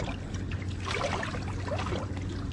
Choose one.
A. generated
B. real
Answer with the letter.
B